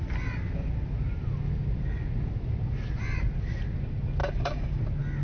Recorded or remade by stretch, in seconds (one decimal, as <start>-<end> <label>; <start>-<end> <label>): 0.0-4.2 recorded; 4.2-4.8 remade; 4.8-5.2 recorded